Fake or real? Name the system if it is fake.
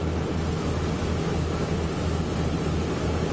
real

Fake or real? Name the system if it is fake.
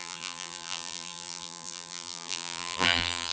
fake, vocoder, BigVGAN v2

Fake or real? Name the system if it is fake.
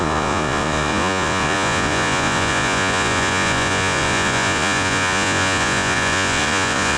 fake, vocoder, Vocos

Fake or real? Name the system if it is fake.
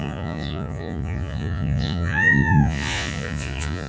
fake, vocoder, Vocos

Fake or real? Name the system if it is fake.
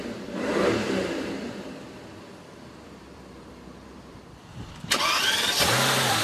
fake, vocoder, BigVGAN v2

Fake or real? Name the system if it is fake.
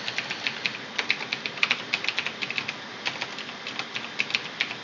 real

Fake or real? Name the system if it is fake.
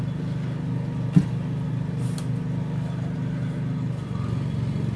real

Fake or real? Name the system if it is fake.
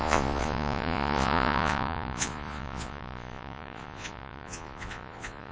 fake, vocoder, Vocos